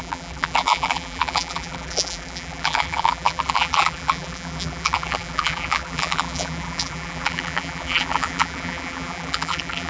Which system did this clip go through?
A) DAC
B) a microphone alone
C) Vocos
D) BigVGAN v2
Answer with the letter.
D